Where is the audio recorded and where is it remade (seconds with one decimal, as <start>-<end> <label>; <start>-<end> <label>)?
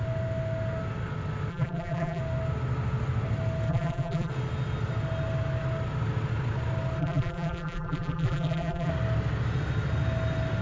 0.0-1.5 recorded; 1.5-2.2 remade; 2.2-3.7 recorded; 3.7-4.3 remade; 4.3-7.0 recorded; 7.0-8.9 remade; 8.9-10.6 recorded